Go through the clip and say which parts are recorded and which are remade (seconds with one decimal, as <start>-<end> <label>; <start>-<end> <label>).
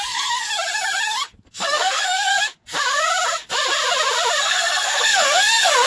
0.0-0.5 remade; 0.5-1.4 recorded; 1.4-2.3 remade; 2.3-4.4 recorded; 4.4-5.9 remade